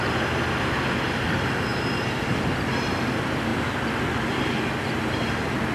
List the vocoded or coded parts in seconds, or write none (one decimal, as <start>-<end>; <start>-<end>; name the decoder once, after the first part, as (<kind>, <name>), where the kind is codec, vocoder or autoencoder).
3.5-4.3 (vocoder, BigVGAN v2)